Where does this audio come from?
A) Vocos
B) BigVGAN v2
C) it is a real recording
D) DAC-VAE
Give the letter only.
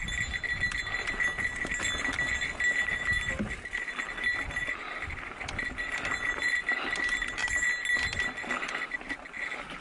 C